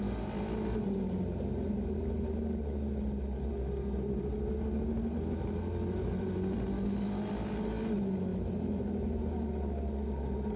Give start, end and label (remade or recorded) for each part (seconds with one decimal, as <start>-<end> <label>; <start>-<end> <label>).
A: 0.0-10.6 recorded